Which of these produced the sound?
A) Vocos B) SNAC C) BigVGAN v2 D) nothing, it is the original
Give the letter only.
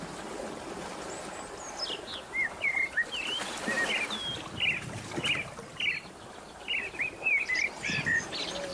D